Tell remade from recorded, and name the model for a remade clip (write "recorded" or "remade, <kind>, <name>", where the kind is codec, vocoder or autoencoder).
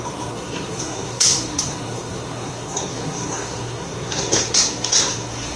remade, codec, SNAC